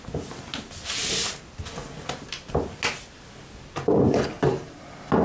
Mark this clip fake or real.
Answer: real